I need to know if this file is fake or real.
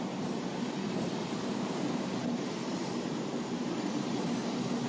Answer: fake